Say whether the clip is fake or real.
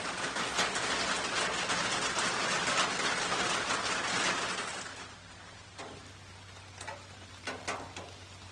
real